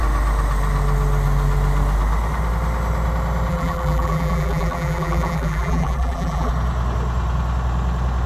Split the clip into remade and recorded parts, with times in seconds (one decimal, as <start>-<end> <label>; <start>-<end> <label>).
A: 0.0-3.5 recorded; 3.5-6.5 remade; 6.5-8.3 recorded